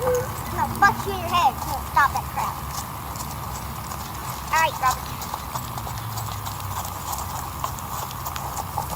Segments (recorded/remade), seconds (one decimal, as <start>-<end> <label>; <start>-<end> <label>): 0.0-9.0 recorded